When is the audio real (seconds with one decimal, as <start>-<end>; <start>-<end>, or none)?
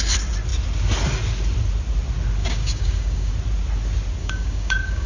0.0-2.4; 3.3-4.2